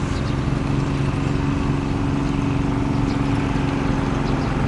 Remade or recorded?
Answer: recorded